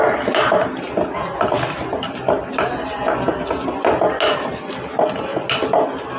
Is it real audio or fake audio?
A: real